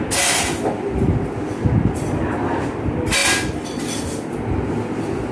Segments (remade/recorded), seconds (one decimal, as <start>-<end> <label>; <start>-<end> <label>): 0.0-5.3 recorded